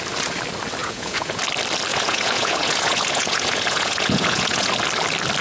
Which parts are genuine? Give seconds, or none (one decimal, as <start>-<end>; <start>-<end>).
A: 0.0-0.8; 1.4-1.9; 4.7-5.4